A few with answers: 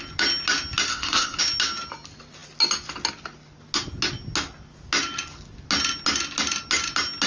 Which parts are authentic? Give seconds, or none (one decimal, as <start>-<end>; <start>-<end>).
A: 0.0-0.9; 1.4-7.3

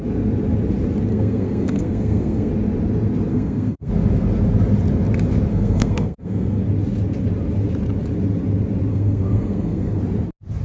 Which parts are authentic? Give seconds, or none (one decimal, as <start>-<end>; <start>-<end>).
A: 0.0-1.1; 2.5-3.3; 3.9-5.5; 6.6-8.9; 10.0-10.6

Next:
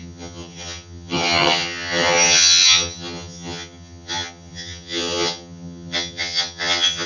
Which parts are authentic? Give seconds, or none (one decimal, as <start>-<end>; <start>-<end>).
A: none

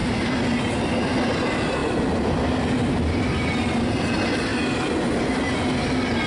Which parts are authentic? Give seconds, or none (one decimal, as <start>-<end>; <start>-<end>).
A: 0.0-6.3

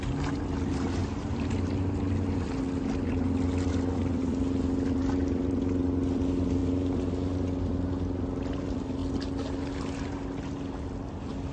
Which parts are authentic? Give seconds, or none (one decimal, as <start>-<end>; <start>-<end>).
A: 0.0-11.5

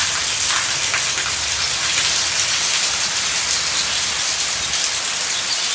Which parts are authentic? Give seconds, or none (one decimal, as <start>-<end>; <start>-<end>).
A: 0.0-5.7